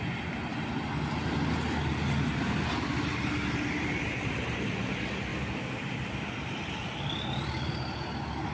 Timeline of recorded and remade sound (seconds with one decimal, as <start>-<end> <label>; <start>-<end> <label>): 0.0-2.3 recorded; 2.3-4.6 remade; 4.6-8.5 recorded